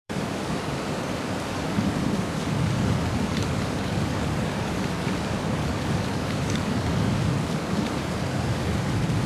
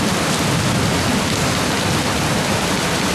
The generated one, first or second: first